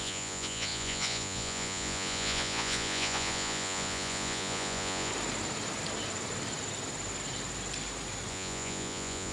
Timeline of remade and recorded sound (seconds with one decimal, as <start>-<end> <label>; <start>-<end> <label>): 0.0-5.1 remade; 5.1-8.3 recorded; 8.3-9.3 remade